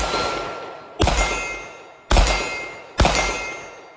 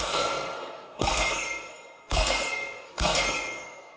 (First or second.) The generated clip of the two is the second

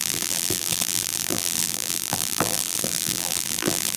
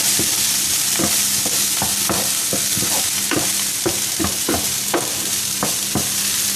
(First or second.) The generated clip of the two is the first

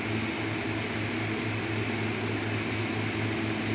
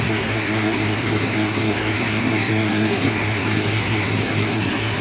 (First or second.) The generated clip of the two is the second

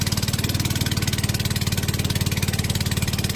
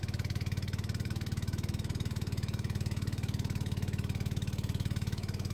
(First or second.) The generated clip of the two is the second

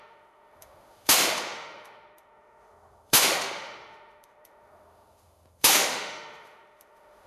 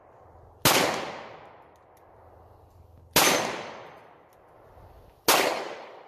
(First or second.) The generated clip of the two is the first